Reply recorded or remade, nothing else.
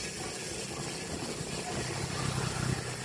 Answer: recorded